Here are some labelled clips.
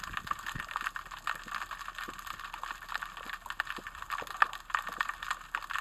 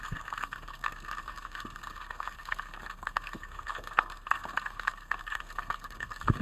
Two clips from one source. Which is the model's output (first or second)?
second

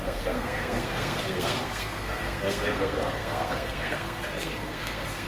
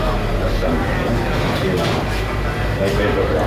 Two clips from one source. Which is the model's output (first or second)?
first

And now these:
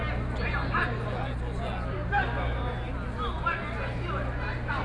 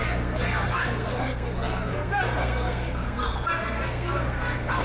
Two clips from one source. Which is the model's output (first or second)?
second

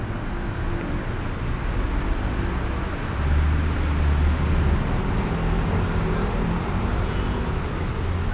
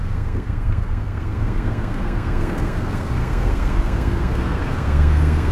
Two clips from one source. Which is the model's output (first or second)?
second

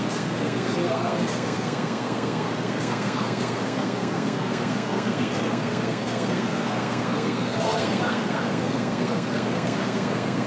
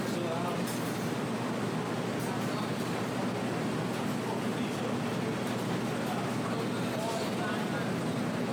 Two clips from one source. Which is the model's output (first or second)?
first